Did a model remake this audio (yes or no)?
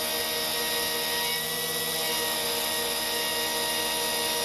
no